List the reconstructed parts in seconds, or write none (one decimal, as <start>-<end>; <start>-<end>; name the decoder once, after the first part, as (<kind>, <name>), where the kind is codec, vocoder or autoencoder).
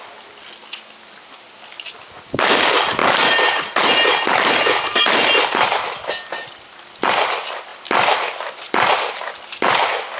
none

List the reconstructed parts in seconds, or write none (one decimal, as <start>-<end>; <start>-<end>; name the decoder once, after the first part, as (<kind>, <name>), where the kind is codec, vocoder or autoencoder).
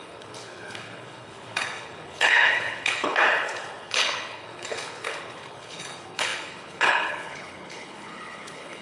0.0-8.8 (codec, HILCodec)